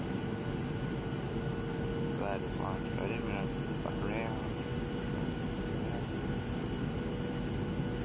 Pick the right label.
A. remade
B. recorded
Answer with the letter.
B